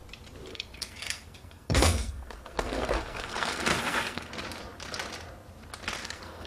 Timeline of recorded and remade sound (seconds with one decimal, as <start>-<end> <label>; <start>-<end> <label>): 0.0-0.5 recorded; 0.5-4.3 remade; 4.3-6.0 recorded; 6.0-6.5 remade